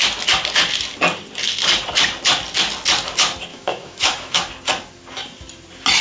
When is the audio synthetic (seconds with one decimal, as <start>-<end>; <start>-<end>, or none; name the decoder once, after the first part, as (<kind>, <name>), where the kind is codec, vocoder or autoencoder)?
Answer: 3.5-4.5 (autoencoder, DAC-VAE)